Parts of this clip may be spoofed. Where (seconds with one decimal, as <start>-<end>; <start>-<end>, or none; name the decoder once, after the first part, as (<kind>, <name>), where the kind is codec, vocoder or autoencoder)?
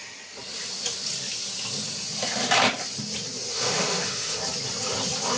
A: 3.5-4.4 (autoencoder, DAC-VAE)